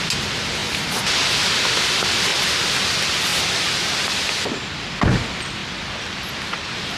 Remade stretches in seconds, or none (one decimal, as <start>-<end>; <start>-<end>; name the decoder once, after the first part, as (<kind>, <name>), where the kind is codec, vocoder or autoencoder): none